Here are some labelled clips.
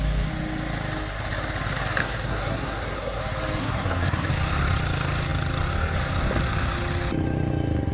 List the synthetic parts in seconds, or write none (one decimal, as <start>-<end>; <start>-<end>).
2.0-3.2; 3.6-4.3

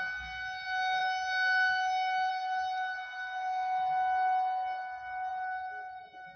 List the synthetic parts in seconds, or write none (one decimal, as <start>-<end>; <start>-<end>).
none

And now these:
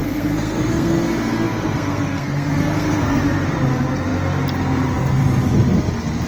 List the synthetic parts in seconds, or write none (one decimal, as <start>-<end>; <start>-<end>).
0.0-3.2